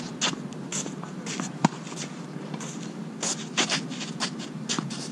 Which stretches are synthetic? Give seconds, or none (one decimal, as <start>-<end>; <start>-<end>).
none